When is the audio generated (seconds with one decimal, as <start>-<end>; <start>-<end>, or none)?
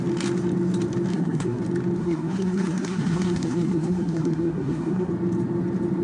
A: 1.1-1.6; 2.0-5.1